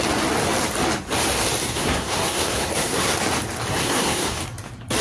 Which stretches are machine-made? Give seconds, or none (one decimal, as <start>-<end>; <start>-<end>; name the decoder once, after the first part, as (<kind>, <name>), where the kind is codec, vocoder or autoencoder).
1.6-3.2 (codec, SNAC); 3.7-4.4